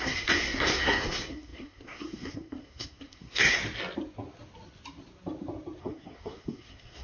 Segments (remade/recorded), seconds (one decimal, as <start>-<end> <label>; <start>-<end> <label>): 0.0-3.6 remade; 3.6-5.8 recorded; 5.8-7.0 remade

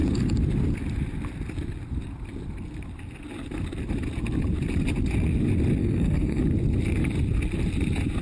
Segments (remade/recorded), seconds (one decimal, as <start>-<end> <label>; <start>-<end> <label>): 0.0-5.8 recorded; 5.8-6.4 remade; 6.4-8.2 recorded

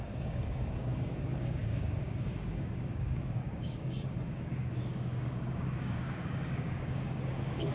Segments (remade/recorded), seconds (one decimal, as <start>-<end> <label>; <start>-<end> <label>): 0.0-7.7 remade

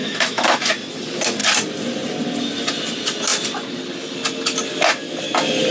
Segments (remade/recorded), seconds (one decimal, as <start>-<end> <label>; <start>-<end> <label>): 0.0-0.6 remade; 0.6-5.7 recorded